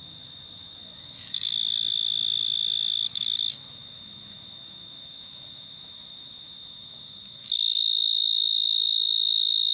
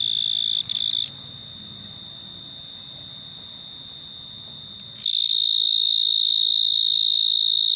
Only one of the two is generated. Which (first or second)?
first